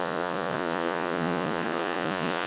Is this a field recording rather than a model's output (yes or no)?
no